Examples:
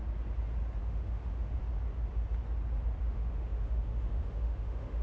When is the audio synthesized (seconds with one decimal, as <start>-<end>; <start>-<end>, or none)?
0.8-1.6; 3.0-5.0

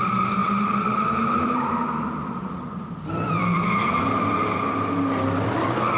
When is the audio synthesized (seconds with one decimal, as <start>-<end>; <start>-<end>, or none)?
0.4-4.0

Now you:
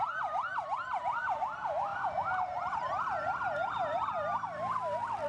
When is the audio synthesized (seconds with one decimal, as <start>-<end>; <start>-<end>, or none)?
none